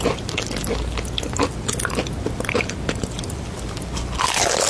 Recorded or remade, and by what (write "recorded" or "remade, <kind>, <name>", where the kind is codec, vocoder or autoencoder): recorded